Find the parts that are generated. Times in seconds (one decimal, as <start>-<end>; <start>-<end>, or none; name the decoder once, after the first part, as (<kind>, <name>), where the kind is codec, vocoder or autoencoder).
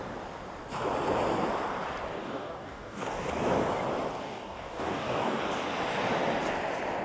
2.2-3.3 (codec, DAC); 4.2-5.4